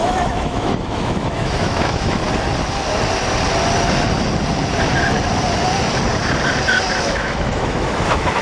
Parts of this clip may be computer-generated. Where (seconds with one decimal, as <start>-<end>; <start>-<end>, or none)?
0.0-2.2; 7.0-8.4